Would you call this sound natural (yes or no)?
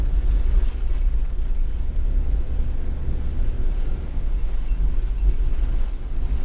yes